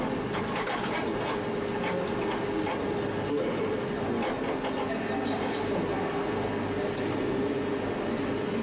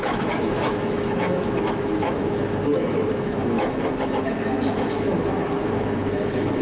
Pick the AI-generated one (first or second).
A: second